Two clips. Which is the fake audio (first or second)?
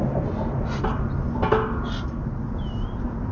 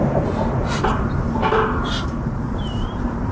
second